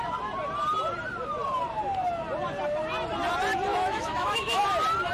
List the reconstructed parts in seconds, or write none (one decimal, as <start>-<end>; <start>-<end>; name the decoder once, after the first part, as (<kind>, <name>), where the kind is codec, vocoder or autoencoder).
3.7-4.6 (autoencoder, DAC-VAE)